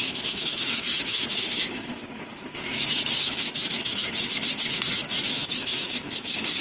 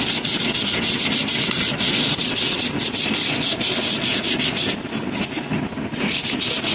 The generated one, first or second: first